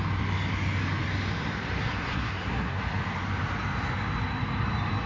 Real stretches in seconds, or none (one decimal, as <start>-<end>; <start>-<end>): 0.0-1.8; 2.8-5.1